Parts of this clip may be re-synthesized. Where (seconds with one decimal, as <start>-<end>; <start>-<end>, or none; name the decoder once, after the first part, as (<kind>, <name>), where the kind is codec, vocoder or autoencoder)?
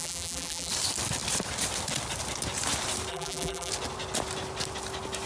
0.0-0.7 (vocoder, BigVGAN v2); 3.1-3.7